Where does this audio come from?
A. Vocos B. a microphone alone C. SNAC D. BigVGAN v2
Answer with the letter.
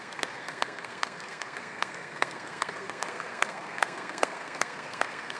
C